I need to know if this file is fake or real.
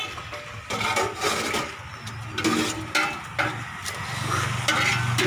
real